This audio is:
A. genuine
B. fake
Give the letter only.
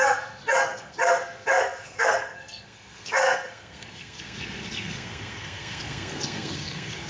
B